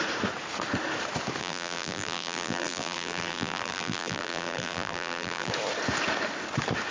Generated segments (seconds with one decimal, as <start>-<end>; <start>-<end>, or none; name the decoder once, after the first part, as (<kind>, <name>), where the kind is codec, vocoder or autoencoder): 1.4-5.5 (vocoder, BigVGAN v2)